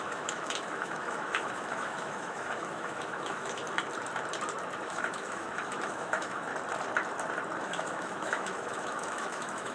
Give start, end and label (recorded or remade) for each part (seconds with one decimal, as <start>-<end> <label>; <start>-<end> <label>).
0.0-3.6 remade; 3.6-4.8 recorded; 4.8-6.5 remade; 6.5-7.6 recorded; 7.6-9.7 remade